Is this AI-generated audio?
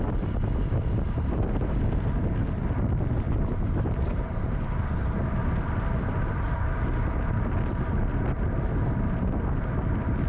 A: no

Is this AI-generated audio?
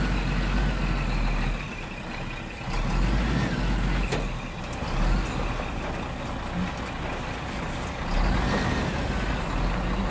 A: no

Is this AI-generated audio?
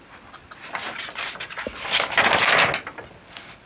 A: no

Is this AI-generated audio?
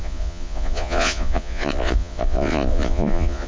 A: yes